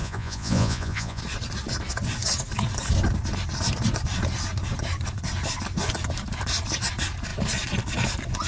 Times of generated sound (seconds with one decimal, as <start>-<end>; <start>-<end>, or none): 0.0-1.2